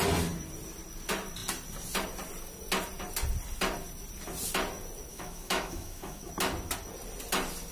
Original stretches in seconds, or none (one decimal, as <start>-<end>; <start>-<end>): 0.0-5.1; 6.3-7.7